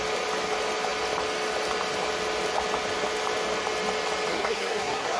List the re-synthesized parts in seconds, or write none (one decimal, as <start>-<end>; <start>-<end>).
4.3-5.2

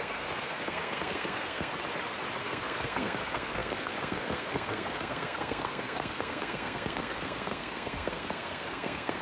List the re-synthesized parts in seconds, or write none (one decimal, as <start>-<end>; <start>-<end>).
0.0-1.7; 2.4-9.2